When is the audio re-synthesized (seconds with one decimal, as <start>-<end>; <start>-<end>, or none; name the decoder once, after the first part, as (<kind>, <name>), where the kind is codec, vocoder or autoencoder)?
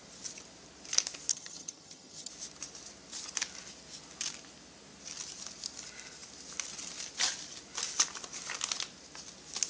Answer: 1.3-2.3 (vocoder, HiFi-GAN)